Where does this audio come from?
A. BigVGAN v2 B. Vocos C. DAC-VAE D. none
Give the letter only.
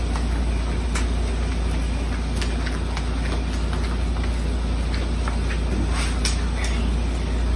D